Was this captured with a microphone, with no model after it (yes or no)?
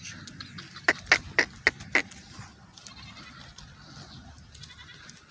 yes